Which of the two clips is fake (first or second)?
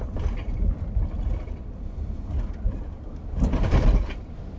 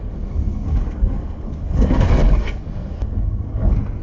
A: second